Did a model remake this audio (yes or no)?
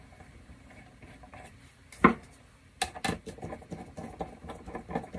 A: no